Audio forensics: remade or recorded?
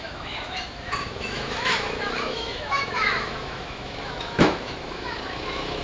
remade